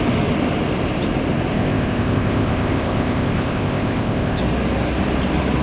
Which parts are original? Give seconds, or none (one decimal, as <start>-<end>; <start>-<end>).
0.0-1.5; 4.4-5.6